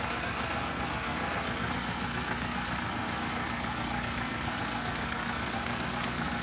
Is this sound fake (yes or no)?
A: yes